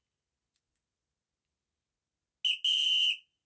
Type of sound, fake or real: real